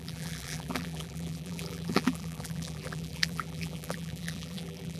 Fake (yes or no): yes